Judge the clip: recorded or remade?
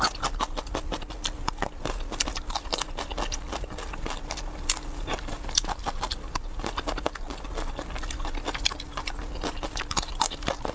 recorded